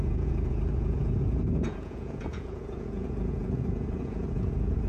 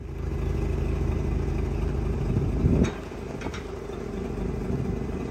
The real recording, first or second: second